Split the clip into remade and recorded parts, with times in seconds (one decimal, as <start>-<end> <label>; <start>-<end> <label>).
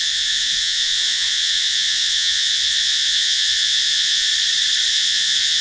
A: 0.0-4.3 remade; 4.3-4.9 recorded; 4.9-5.6 remade